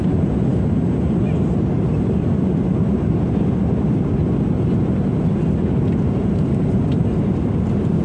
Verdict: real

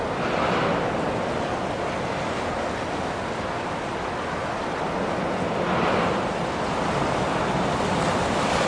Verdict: real